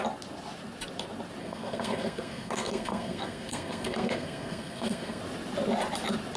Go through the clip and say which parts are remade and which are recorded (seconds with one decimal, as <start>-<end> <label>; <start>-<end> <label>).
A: 0.0-1.4 recorded; 1.4-5.2 remade; 5.2-6.4 recorded